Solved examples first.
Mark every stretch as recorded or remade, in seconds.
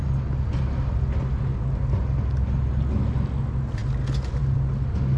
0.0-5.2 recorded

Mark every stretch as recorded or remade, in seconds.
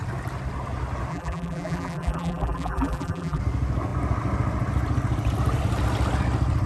0.0-1.1 recorded; 1.1-3.4 remade; 3.4-6.7 recorded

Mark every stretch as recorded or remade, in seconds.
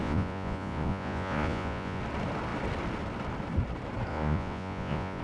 0.0-2.0 remade; 2.0-4.1 recorded; 4.1-5.2 remade